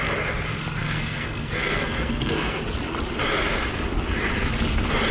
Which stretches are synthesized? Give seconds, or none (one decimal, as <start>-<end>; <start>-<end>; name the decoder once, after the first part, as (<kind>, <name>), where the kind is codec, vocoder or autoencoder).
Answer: 0.8-2.6 (codec, SNAC)